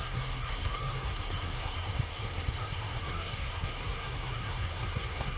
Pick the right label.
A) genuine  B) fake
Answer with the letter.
B